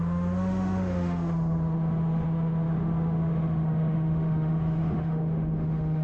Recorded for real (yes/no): no